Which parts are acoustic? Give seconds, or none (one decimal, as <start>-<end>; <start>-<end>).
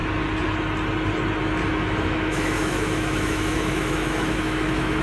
0.0-2.0